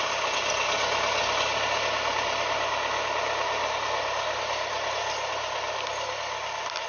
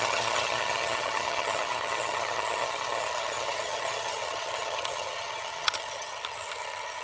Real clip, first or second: first